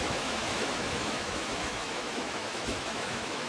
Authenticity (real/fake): fake